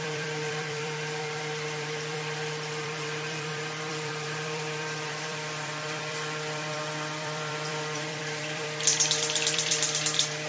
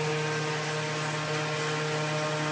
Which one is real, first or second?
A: second